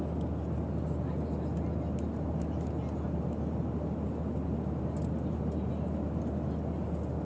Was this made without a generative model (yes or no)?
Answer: yes